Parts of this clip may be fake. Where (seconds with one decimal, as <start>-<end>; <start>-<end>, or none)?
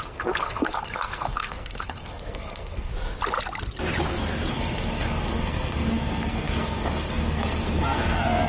0.0-2.9; 4.5-8.5